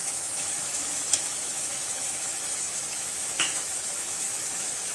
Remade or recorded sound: remade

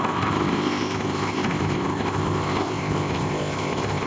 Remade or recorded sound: remade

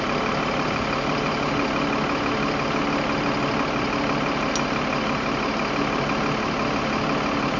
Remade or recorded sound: recorded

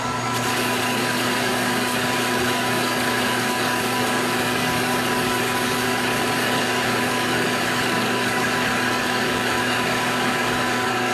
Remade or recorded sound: remade